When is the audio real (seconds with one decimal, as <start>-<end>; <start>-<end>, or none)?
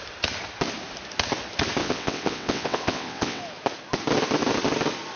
0.0-1.8; 3.4-5.2